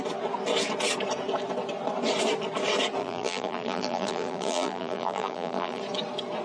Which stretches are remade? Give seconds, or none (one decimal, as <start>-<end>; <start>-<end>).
3.0-5.8